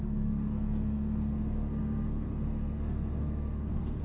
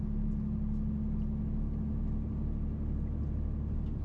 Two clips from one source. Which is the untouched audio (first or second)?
second